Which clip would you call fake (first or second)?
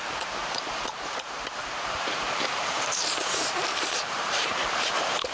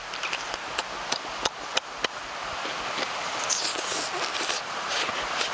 first